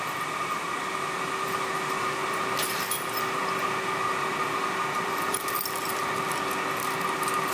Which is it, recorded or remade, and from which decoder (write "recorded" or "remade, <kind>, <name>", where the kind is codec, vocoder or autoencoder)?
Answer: recorded